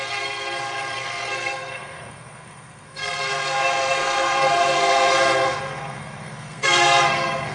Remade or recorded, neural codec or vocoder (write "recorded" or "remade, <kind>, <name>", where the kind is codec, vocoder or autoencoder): remade, codec, SNAC